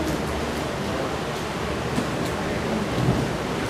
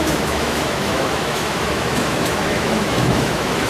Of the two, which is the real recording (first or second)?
first